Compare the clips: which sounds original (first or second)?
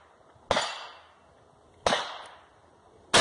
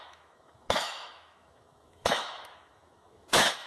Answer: first